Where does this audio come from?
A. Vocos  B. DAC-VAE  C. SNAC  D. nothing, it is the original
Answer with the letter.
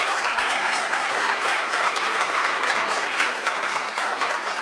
C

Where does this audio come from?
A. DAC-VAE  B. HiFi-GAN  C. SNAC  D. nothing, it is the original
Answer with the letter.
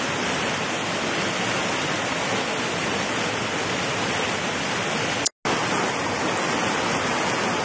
D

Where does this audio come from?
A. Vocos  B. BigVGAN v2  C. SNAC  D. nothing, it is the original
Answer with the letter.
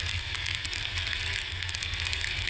C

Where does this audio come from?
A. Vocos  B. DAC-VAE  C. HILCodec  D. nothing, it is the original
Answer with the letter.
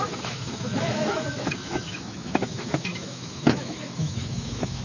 B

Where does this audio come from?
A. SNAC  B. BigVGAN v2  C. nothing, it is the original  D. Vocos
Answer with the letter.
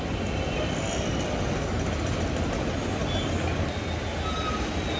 C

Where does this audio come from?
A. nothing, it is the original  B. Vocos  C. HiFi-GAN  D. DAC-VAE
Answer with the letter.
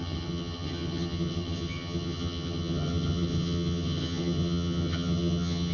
C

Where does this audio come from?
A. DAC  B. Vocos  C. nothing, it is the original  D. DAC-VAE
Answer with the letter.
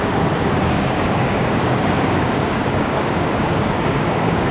A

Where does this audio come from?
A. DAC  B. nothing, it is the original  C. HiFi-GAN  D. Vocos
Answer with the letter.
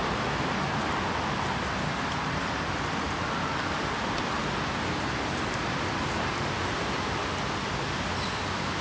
B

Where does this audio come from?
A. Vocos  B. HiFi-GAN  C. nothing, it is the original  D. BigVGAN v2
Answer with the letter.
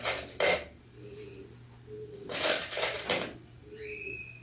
C